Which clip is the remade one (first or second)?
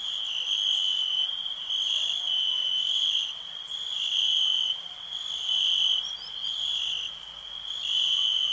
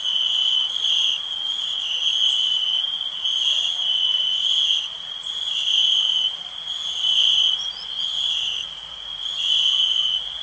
second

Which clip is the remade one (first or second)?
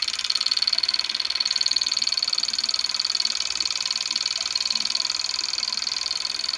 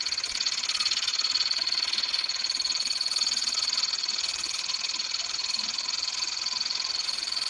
second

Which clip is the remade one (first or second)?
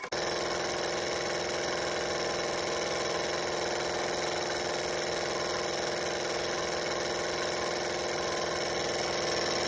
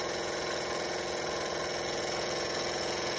second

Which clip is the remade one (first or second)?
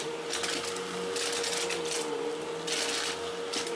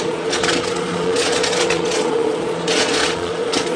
second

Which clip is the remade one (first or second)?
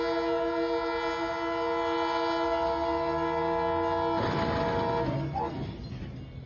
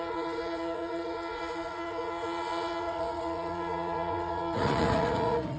second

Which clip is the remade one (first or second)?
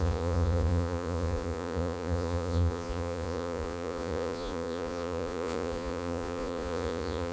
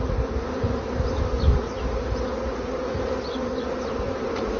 first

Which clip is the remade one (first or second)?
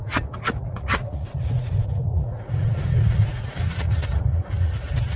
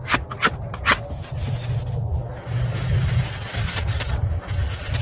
first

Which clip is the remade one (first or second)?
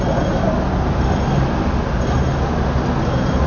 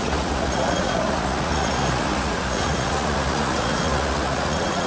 second